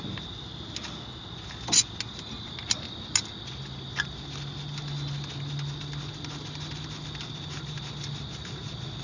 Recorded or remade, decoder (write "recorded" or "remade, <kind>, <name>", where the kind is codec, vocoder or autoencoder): recorded